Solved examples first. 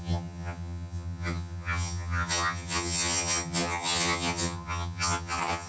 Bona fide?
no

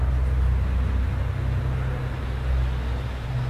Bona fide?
yes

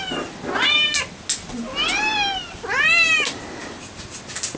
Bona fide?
yes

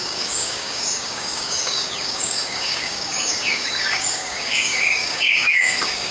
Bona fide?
no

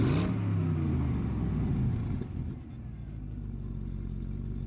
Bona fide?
yes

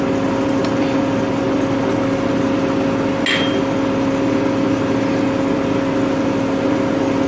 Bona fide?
yes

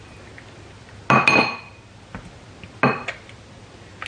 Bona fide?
yes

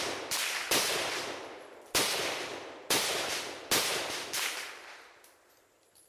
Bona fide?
yes